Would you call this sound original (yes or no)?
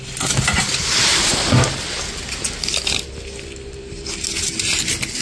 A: yes